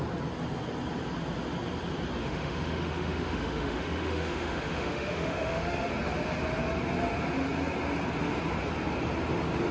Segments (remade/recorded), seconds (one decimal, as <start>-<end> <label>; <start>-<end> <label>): 0.0-2.2 recorded; 2.2-5.9 remade; 5.9-9.7 recorded